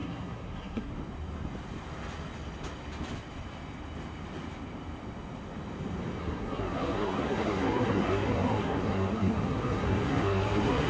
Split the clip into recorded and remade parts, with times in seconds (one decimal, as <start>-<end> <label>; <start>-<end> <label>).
0.0-0.9 remade; 0.9-6.2 recorded; 6.2-10.9 remade